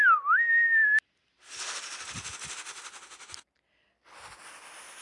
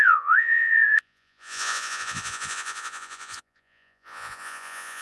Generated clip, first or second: second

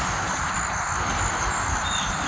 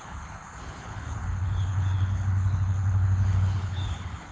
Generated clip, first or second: second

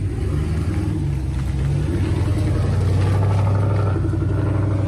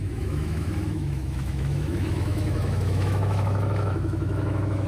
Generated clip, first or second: second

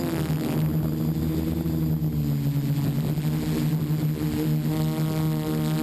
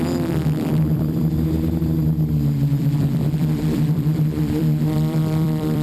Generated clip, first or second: second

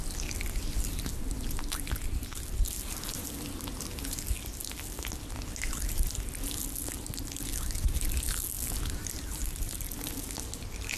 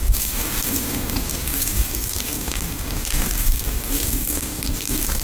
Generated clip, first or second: second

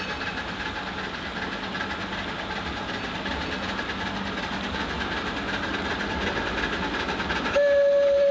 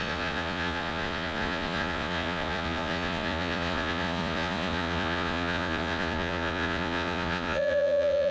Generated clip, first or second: second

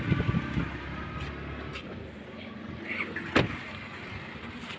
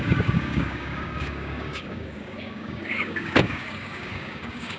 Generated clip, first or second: second